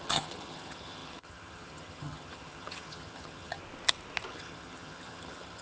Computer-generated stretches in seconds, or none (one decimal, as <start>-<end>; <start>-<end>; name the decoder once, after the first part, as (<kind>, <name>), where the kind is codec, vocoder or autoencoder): 0.0-3.6 (vocoder, HiFi-GAN); 4.3-5.6